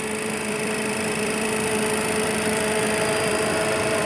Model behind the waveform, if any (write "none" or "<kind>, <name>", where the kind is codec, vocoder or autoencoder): vocoder, BigVGAN v2